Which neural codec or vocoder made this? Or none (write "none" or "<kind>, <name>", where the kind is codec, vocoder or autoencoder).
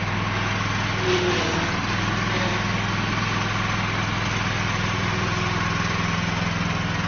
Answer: none